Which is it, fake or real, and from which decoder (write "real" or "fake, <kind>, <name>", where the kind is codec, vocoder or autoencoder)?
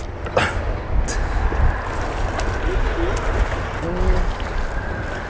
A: real